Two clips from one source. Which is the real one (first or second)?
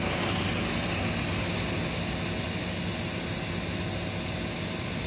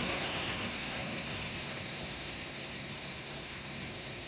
first